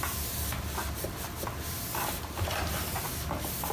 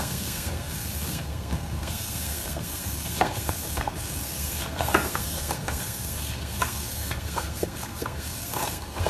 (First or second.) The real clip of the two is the first